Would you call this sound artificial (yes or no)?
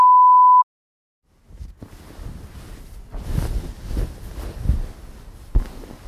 no